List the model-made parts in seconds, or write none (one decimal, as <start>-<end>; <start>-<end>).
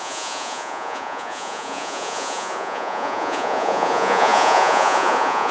0.0-5.5